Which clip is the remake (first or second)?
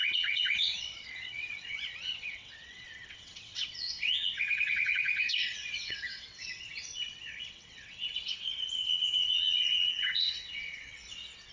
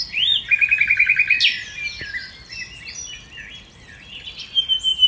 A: first